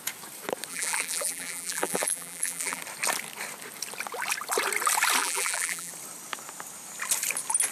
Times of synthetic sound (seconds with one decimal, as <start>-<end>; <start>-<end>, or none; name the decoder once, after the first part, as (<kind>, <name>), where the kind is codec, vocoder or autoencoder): 0.7-2.8 (vocoder, BigVGAN v2); 5.2-5.9